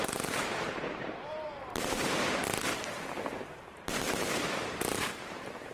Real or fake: fake